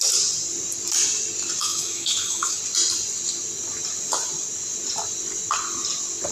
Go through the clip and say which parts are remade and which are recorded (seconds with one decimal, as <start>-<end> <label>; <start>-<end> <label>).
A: 0.0-1.6 recorded; 1.6-2.6 remade; 2.6-6.3 recorded